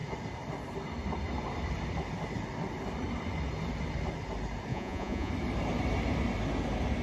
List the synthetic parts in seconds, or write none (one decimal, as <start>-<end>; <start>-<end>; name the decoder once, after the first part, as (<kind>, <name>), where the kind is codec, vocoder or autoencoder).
4.7-5.3 (vocoder, Vocos)